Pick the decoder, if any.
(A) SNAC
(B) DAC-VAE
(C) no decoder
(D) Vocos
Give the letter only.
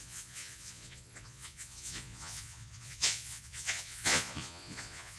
D